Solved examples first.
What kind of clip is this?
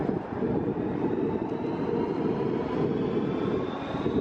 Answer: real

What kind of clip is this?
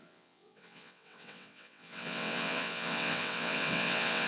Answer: fake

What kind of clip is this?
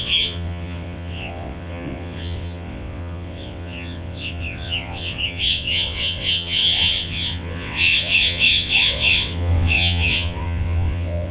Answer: fake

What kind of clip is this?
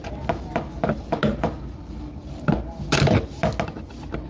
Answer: real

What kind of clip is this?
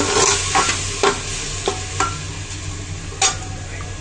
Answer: real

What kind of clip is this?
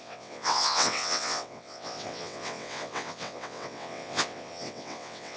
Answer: fake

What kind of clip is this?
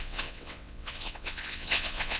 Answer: fake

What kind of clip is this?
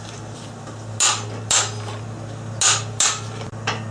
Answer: real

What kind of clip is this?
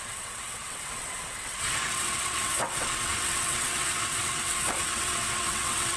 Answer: fake